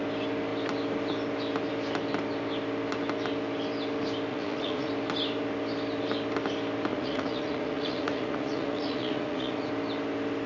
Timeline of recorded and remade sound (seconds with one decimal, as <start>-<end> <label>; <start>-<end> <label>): 0.0-4.3 recorded; 4.3-4.9 remade; 4.9-6.9 recorded; 6.9-9.7 remade; 9.7-10.5 recorded